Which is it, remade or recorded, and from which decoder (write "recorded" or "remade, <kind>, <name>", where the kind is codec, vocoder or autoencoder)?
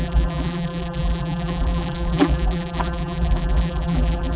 remade, vocoder, BigVGAN v2